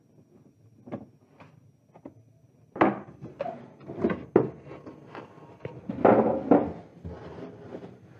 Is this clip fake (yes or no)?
no